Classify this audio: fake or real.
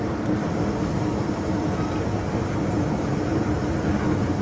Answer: real